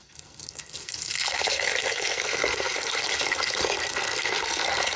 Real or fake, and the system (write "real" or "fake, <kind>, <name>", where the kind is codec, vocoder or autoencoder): fake, codec, SNAC